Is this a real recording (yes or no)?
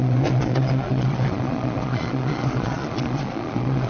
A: no